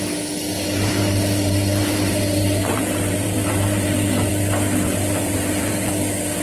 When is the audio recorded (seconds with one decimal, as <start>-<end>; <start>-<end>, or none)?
0.0-0.5; 4.3-4.9; 5.9-6.4